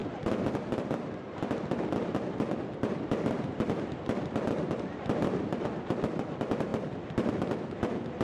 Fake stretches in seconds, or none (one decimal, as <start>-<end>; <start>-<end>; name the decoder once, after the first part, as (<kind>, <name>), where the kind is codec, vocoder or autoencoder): 0.0-4.9 (vocoder, BigVGAN v2)